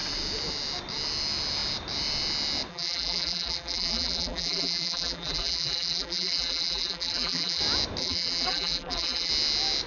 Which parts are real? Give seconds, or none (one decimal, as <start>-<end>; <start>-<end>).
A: 0.0-2.7; 7.6-8.0; 9.3-9.9